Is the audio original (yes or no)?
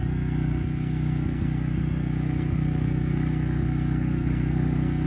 no